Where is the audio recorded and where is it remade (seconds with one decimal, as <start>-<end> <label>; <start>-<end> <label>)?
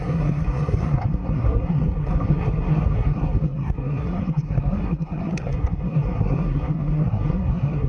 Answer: 0.0-7.9 remade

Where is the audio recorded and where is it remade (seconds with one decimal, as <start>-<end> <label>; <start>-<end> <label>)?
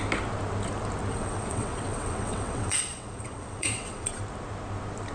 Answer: 0.0-1.1 recorded; 1.1-4.2 remade; 4.2-5.1 recorded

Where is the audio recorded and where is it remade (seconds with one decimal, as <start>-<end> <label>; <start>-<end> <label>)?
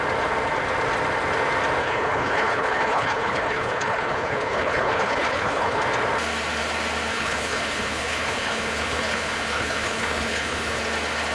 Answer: 0.0-1.8 recorded; 1.8-5.8 remade; 5.8-7.1 recorded; 7.1-10.8 remade; 10.8-11.3 recorded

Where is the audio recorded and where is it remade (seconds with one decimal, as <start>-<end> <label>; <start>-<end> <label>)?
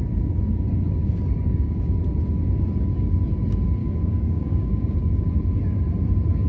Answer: 0.0-1.0 recorded; 1.0-2.0 remade; 2.0-3.8 recorded; 3.8-5.4 remade; 5.4-6.5 recorded